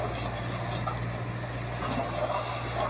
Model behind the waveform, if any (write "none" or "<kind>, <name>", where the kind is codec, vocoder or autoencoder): none